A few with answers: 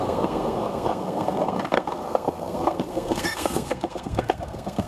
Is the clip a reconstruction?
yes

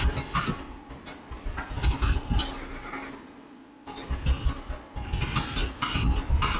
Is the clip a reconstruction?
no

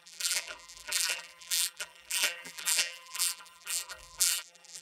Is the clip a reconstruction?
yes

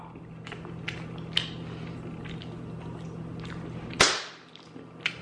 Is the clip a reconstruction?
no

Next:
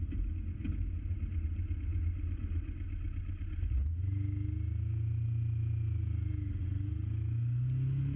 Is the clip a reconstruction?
no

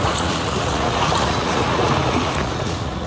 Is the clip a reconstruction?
yes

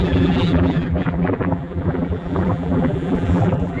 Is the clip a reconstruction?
yes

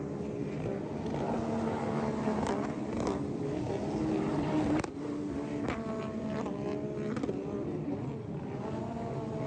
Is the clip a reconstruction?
no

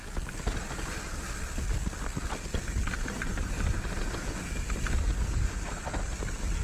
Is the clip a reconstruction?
no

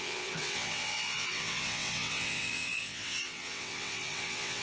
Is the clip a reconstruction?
yes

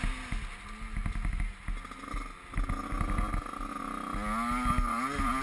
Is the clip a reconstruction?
no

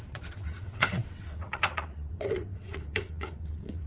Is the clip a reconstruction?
yes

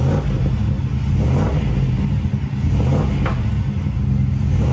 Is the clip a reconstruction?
no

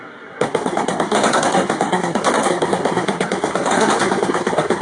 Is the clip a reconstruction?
yes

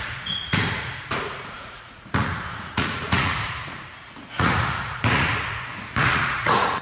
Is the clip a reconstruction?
yes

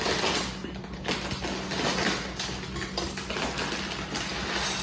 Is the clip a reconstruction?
no